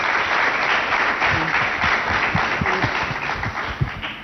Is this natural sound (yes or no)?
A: yes